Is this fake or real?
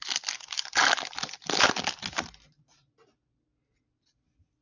real